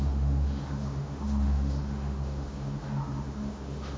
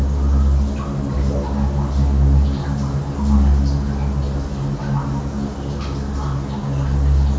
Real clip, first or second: second